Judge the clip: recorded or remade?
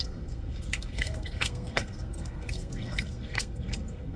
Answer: remade